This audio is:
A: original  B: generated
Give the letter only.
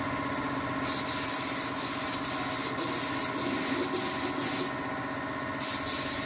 A